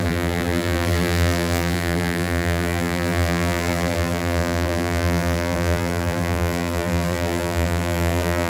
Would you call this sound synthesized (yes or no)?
yes